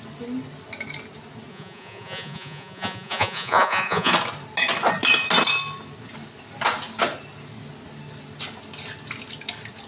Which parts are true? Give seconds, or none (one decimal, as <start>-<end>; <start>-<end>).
0.0-1.5; 4.1-9.9